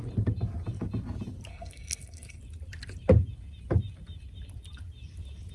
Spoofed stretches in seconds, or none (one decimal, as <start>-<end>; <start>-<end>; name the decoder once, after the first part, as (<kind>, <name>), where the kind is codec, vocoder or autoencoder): 1.5-2.4 (codec, SNAC)